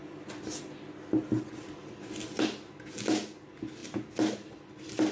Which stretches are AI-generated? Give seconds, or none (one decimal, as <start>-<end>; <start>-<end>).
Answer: 3.8-5.1